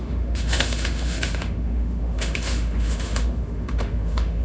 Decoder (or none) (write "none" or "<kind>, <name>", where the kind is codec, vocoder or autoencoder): autoencoder, DAC-VAE